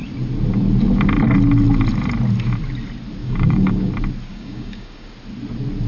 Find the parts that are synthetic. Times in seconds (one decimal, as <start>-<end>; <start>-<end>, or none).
3.2-3.9; 4.3-5.1